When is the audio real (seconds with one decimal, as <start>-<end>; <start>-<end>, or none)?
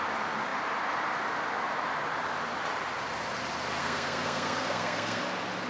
0.0-3.8; 5.2-5.7